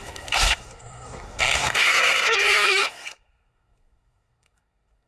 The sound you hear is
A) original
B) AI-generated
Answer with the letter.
B